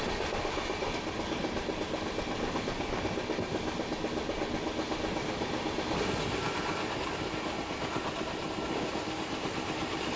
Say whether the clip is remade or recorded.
recorded